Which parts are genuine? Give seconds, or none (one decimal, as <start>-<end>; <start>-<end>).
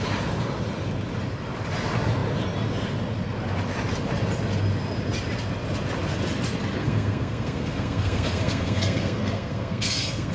0.0-6.8